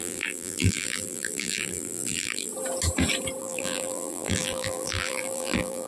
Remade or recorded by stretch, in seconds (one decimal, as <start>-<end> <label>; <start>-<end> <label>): 0.0-2.5 remade; 2.5-3.4 recorded; 3.4-5.9 remade